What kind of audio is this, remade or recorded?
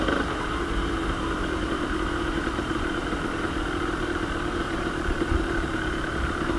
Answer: remade